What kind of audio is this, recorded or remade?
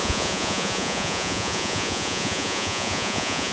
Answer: remade